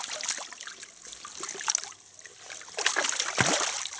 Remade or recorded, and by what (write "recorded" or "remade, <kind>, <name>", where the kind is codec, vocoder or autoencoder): recorded